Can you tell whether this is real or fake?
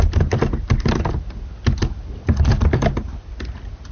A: real